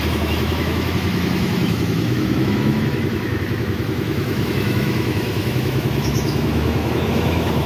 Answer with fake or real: fake